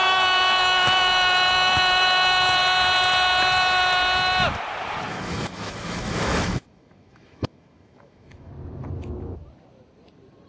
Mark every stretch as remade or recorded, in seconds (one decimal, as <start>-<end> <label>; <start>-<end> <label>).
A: 0.0-2.6 remade; 2.6-5.1 recorded; 5.1-8.5 remade; 8.5-10.5 recorded